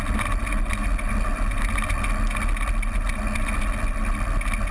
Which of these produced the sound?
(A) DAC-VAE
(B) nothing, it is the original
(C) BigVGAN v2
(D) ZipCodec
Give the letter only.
B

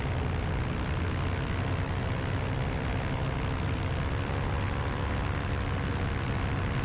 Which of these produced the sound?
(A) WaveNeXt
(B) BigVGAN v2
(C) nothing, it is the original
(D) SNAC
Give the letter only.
C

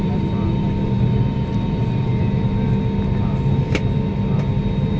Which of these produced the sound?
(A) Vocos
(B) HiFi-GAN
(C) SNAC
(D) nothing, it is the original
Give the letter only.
D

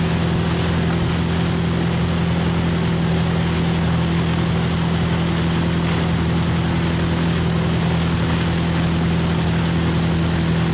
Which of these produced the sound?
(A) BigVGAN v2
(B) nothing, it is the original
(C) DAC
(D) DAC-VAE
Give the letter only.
B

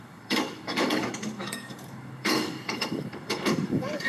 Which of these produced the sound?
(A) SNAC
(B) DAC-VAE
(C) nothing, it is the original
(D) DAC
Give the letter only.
D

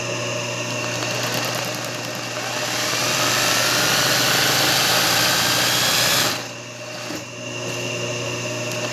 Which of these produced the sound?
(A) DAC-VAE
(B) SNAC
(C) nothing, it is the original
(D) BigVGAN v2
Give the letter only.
C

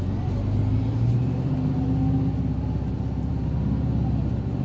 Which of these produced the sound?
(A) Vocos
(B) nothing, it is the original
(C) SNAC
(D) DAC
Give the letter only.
B